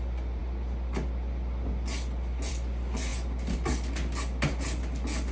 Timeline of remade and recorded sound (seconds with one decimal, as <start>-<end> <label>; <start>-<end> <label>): 0.0-5.3 recorded